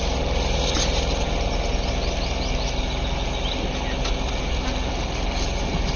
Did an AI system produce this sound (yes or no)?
no